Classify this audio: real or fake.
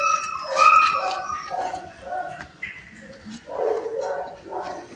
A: fake